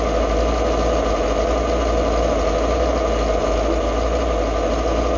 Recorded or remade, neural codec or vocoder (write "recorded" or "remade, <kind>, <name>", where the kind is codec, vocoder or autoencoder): recorded